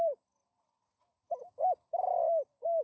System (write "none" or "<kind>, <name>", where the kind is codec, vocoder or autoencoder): none